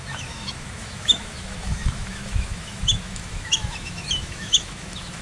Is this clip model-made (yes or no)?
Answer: yes